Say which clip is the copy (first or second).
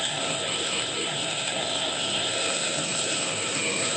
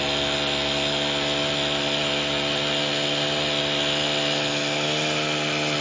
first